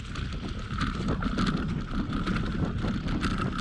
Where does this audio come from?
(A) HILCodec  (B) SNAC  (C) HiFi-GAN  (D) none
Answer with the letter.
D